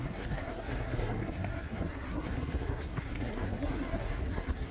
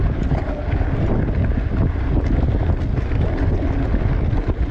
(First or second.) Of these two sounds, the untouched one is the second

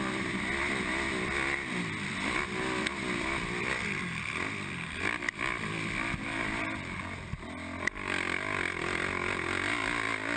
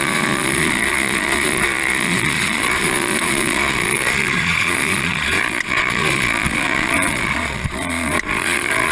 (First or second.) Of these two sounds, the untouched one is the first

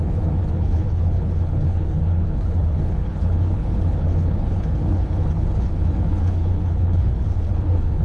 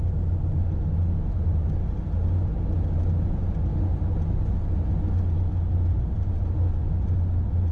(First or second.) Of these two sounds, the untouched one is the second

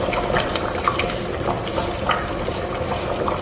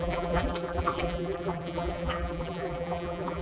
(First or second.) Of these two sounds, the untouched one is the first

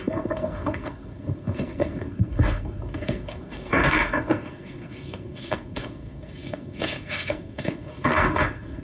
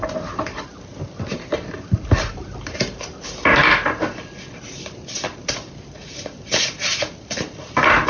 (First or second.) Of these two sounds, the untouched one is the second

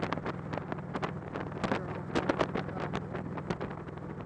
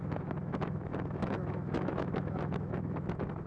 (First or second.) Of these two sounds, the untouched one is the first